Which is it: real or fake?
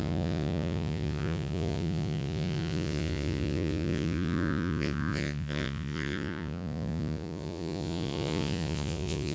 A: fake